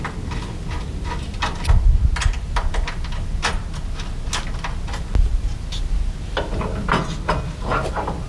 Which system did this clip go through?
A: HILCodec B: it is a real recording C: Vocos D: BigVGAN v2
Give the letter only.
B